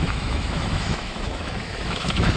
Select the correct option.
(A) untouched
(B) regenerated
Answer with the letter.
B